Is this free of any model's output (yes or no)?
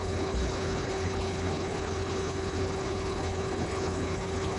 no